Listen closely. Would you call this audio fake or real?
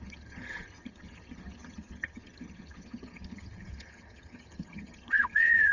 fake